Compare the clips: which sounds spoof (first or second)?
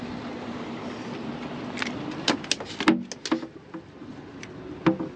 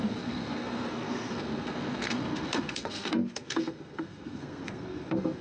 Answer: second